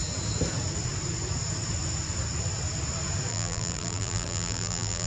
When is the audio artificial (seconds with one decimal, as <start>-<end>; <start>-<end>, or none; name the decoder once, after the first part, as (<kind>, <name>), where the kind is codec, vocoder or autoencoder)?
3.3-5.1 (vocoder, BigVGAN v2)